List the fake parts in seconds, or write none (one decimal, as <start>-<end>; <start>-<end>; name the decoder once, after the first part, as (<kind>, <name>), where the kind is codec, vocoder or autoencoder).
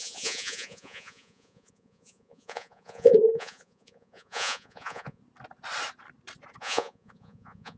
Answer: 0.0-5.2 (vocoder, Vocos); 6.6-7.8